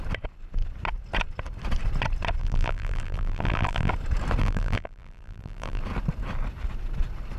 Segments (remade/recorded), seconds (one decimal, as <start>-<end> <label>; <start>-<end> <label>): 0.0-2.4 recorded; 2.4-3.9 remade; 3.9-4.4 recorded; 4.4-5.8 remade; 5.8-7.4 recorded